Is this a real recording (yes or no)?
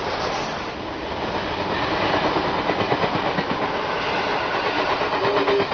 yes